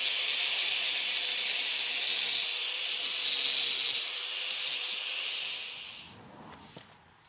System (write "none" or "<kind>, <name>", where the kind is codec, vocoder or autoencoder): none